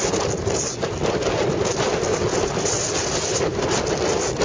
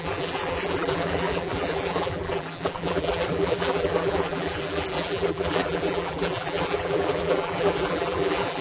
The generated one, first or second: second